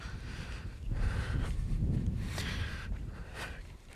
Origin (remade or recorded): remade